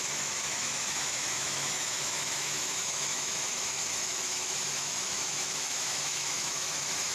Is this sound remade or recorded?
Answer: remade